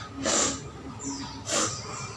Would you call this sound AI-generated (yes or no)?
no